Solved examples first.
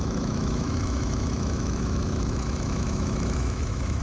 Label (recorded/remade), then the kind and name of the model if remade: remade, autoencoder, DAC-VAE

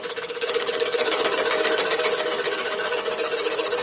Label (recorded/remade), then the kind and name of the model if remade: remade, codec, DAC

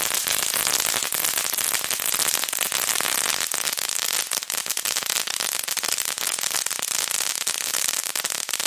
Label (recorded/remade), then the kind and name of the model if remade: recorded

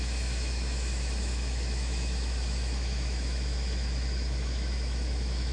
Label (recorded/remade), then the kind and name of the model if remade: remade, autoencoder, DAC-VAE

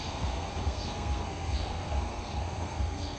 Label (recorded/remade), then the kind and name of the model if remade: remade, codec, SNAC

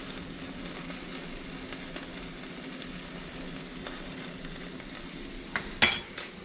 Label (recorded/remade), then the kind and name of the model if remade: recorded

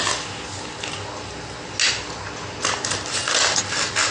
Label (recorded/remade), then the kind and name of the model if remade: recorded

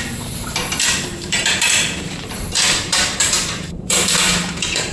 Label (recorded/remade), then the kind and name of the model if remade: remade, vocoder, BigVGAN v2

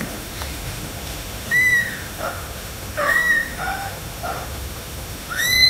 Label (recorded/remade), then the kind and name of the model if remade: remade, autoencoder, DAC-VAE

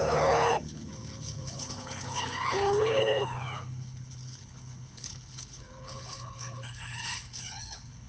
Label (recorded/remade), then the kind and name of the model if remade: remade, codec, HILCodec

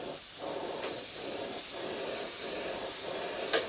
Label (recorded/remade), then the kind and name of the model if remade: recorded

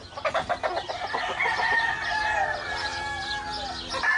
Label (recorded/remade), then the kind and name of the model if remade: recorded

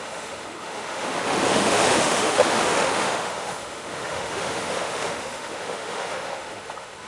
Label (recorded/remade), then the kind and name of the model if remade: remade, autoencoder, DAC-VAE